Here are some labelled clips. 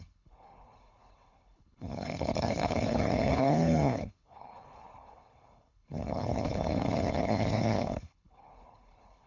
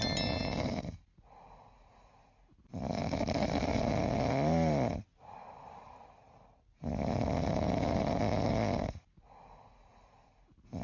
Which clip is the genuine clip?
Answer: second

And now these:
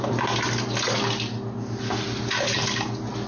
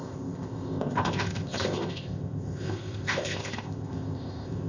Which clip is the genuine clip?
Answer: first